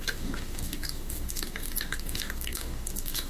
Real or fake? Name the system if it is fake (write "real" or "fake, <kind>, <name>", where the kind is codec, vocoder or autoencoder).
fake, codec, DAC